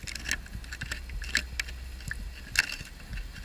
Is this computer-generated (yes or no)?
no